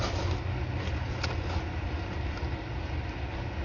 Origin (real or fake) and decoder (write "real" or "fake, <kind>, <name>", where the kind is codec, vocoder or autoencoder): real